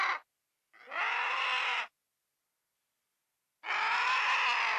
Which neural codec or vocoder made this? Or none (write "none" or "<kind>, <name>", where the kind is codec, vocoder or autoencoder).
none